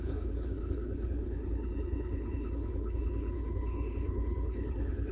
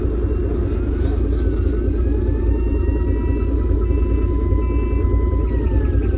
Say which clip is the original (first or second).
second